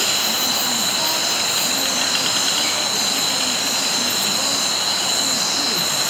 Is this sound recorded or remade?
recorded